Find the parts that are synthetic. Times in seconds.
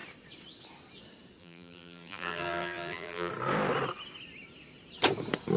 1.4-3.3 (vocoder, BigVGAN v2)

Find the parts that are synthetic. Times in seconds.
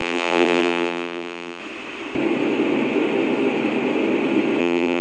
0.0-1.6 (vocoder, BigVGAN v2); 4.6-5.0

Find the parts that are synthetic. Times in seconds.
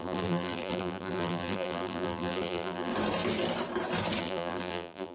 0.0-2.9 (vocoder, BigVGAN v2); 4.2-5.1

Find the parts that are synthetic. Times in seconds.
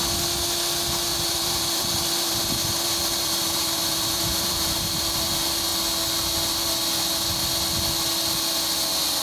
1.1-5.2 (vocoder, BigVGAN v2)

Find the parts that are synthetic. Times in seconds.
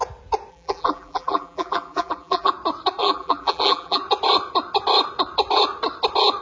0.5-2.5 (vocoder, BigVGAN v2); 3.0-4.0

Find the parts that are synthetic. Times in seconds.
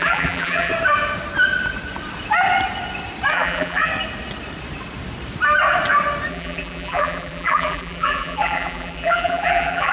0.0-0.7 (vocoder, BigVGAN v2); 3.3-3.9; 6.3-9.9